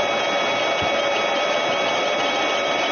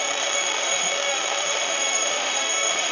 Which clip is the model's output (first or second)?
second